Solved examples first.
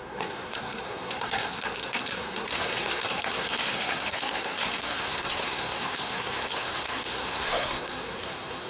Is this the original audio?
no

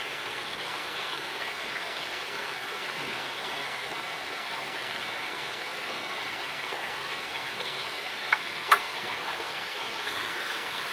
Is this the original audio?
no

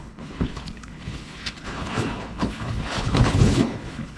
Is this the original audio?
no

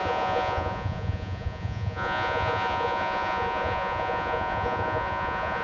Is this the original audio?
no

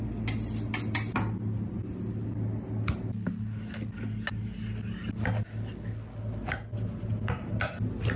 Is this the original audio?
yes